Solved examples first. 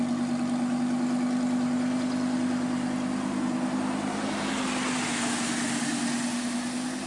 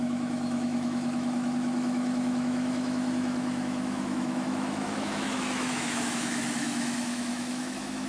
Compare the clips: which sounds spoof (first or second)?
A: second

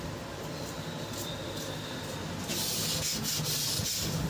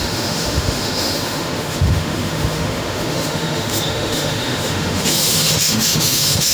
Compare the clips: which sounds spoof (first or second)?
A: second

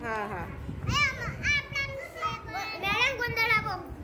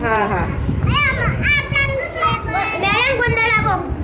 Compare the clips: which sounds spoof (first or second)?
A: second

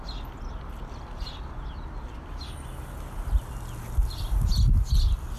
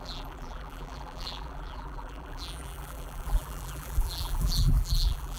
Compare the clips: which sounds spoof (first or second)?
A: second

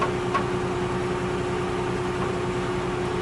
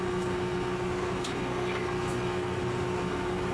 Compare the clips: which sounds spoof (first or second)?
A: second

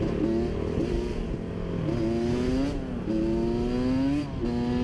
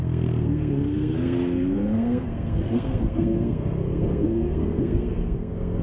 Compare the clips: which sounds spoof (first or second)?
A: second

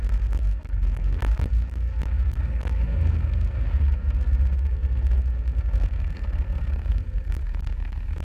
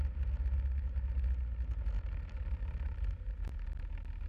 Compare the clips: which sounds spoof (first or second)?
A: first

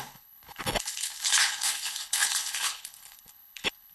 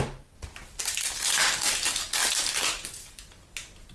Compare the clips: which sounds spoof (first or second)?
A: first